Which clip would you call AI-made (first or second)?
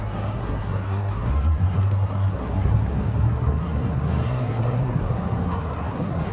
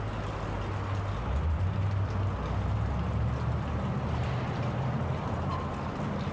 first